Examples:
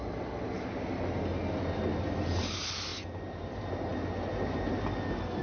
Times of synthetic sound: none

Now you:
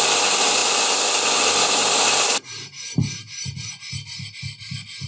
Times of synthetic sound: none

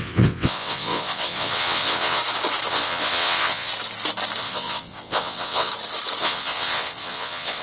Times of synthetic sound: 0.0-2.2; 2.7-3.7; 4.4-5.7; 6.2-7.6

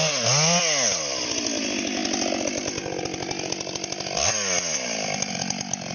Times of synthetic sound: none

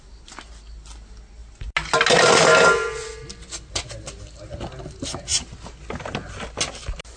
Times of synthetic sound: none

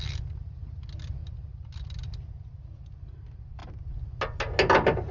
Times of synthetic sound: none

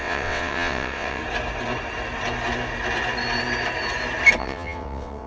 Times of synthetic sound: 0.0-1.2; 4.4-5.3

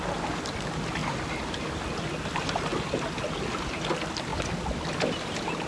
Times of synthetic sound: none